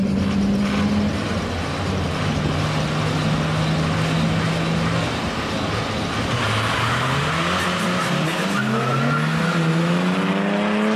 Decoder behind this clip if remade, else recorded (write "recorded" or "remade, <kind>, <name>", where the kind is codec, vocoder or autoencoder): recorded